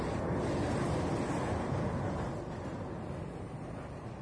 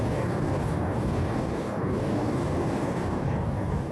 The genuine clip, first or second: first